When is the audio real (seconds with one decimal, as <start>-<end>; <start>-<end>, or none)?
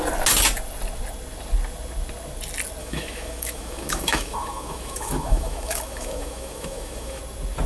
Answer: 0.0-2.8; 7.2-7.7